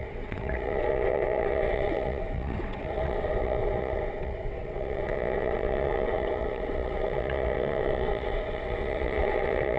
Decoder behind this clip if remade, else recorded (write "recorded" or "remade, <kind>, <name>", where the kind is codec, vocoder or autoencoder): remade, vocoder, WaveNeXt